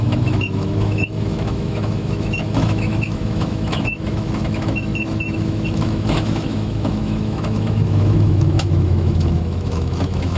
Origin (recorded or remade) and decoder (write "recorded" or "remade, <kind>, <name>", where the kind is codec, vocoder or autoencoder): remade, autoencoder, DAC-VAE